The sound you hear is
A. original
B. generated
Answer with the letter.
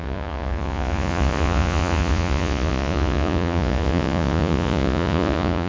B